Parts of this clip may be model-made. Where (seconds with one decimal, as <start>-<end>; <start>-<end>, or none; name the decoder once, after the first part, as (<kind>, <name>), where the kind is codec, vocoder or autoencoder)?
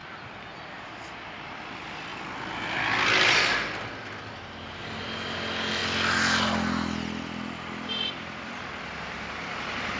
0.7-2.1 (vocoder, BigVGAN v2); 5.0-5.8; 8.1-10.0